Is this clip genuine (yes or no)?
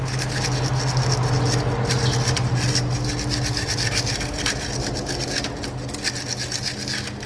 yes